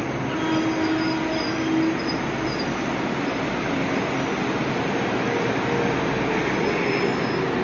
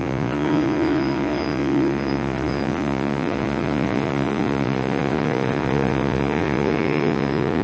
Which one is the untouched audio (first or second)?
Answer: first